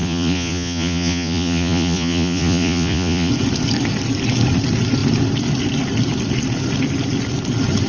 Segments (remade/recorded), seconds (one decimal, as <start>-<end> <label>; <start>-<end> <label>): 0.0-3.3 remade; 3.3-7.9 recorded